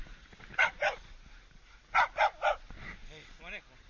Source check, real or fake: real